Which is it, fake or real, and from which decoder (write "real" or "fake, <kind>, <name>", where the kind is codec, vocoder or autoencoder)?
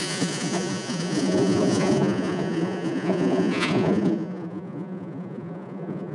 fake, vocoder, Vocos